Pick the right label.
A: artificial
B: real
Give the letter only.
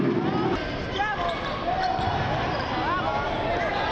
B